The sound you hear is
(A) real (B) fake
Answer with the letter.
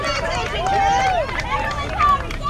A